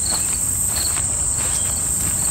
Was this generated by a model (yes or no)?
no